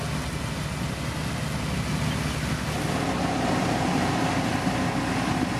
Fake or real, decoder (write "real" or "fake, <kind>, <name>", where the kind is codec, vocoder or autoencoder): real